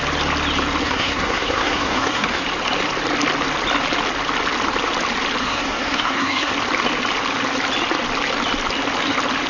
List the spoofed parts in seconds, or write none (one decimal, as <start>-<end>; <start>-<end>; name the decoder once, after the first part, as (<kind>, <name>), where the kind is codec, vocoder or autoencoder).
0.8-2.4 (codec, SNAC); 5.4-6.5